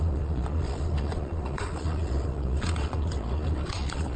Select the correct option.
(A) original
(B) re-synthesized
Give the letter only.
B